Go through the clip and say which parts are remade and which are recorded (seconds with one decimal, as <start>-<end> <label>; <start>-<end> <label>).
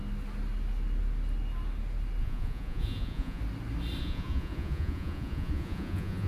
0.0-2.2 recorded; 2.2-3.4 remade; 3.4-4.0 recorded; 4.0-6.3 remade